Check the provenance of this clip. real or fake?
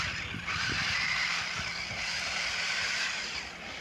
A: fake